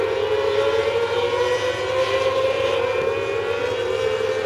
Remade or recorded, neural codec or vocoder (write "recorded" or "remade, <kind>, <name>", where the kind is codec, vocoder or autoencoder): recorded